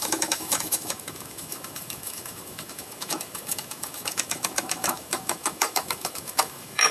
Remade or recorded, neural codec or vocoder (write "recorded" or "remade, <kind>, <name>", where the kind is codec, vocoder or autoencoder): remade, autoencoder, DAC-VAE